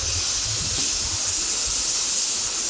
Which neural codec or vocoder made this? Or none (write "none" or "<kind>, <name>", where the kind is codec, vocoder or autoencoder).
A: none